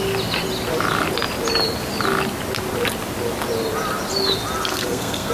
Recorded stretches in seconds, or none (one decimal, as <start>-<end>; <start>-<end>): 0.0-4.7